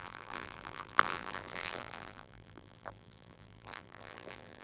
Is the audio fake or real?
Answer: fake